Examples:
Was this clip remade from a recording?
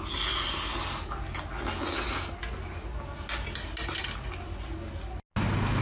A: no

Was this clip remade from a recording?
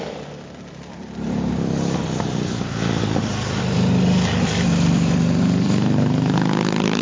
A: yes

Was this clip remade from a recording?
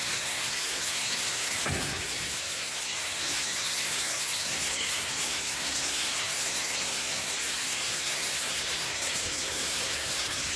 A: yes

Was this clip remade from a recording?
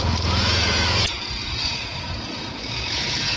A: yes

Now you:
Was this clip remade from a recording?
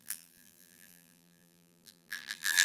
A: yes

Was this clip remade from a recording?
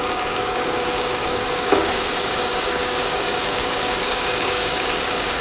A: yes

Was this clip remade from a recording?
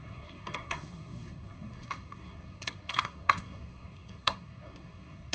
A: yes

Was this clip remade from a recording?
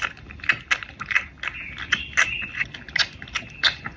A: no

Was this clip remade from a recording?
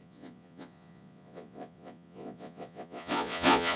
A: yes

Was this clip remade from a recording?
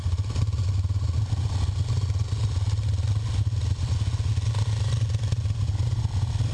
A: no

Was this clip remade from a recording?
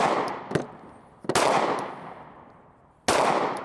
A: no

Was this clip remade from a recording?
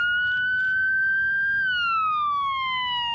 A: no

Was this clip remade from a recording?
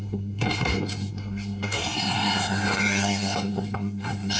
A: yes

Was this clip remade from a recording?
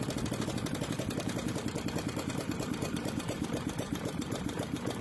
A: yes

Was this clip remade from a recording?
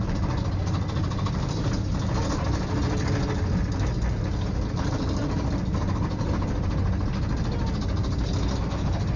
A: no